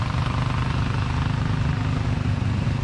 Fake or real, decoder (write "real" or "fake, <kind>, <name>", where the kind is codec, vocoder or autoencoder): real